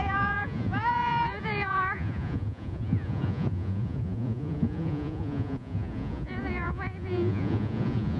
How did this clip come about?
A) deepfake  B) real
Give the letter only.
A